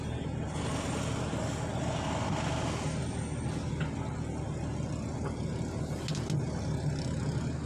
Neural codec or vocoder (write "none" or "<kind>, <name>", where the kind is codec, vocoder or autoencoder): none